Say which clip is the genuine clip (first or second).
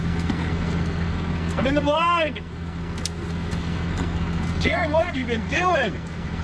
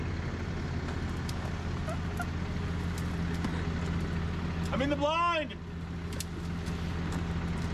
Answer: second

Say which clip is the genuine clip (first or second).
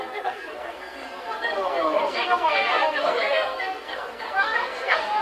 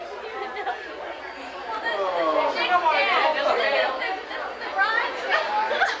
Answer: second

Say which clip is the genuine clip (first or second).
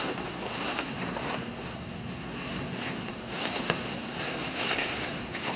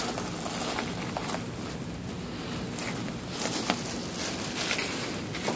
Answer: second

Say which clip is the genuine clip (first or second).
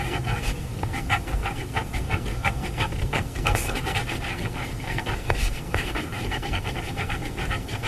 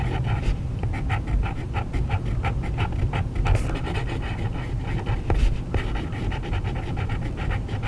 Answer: second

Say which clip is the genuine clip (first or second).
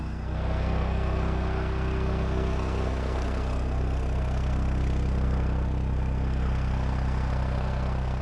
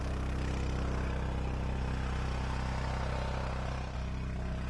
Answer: second